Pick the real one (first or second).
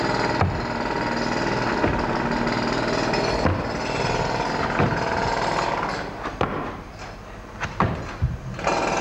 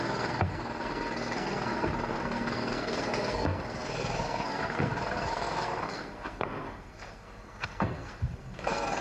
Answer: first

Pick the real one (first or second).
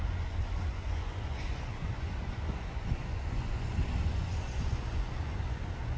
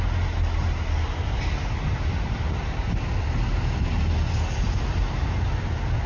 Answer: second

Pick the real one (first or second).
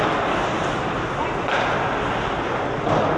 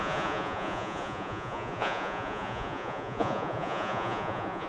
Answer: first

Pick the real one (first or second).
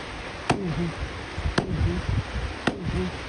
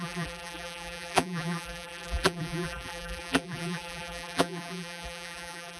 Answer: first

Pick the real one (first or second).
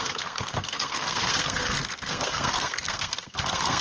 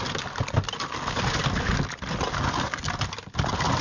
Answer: second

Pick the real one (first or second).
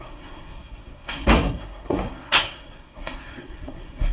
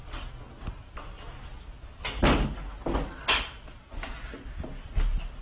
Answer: second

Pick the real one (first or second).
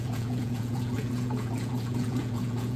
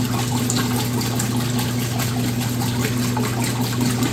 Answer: second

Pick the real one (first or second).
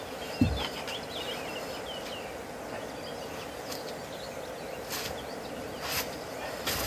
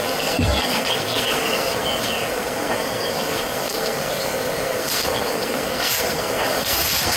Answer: first